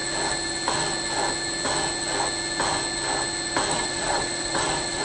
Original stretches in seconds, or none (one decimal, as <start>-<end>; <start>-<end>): 0.0-3.7